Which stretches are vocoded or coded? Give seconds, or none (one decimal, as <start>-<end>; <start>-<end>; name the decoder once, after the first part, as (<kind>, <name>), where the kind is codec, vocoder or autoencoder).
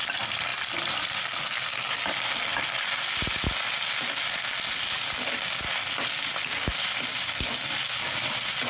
none